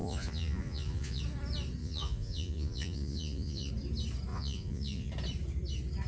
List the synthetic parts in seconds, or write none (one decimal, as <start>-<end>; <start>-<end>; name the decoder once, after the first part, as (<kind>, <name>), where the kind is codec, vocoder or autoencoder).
0.0-1.2 (vocoder, Vocos); 1.8-3.7; 4.3-5.1